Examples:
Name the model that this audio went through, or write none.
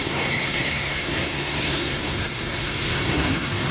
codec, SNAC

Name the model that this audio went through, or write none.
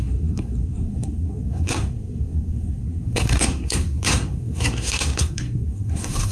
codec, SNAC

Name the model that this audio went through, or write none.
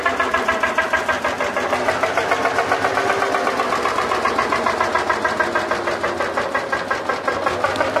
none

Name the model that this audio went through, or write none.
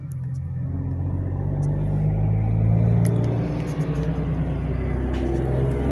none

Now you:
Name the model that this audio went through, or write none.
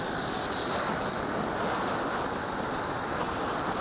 none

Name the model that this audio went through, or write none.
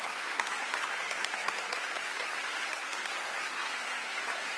codec, SNAC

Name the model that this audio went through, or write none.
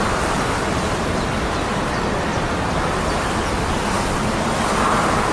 none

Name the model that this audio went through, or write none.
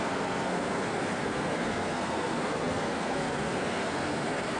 codec, SNAC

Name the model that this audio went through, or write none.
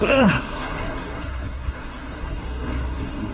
codec, SNAC